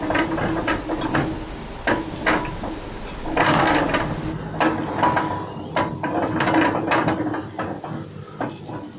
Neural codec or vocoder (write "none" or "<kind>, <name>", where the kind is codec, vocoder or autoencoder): none